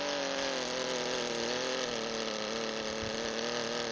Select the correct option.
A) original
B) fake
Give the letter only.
A